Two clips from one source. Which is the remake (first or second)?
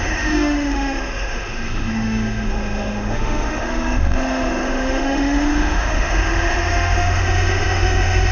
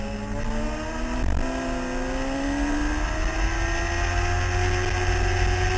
first